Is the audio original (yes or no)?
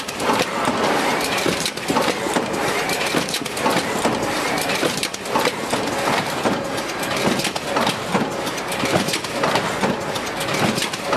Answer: yes